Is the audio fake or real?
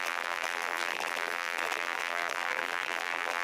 fake